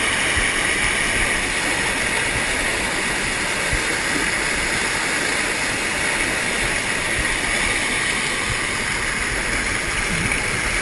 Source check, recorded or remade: recorded